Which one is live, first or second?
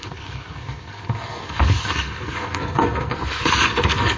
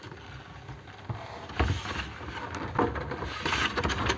second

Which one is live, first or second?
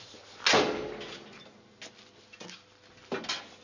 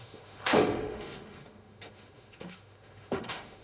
first